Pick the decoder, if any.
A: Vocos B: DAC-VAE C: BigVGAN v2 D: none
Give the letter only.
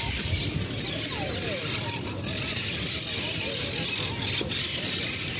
D